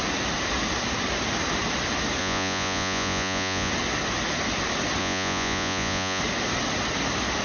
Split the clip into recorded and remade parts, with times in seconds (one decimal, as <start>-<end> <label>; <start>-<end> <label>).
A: 0.0-2.2 recorded; 2.2-3.7 remade; 3.7-5.0 recorded; 5.0-6.2 remade; 6.2-7.4 recorded